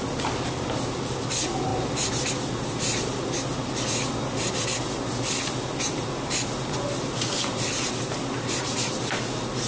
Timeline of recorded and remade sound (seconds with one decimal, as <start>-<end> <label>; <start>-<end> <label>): 0.0-9.7 recorded